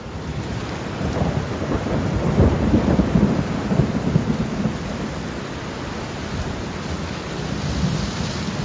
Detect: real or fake real